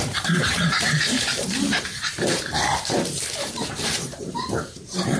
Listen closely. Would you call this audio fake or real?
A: fake